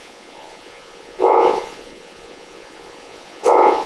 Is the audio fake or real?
fake